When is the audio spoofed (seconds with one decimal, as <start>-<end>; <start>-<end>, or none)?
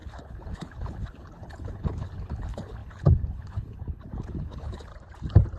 0.0-4.9